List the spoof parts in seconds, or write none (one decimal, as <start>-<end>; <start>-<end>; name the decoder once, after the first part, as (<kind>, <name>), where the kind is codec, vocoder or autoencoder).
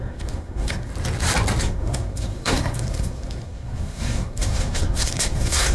0.0-0.9 (codec, SNAC); 1.6-5.7